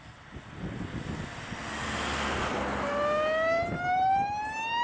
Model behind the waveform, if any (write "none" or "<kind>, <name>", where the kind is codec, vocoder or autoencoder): none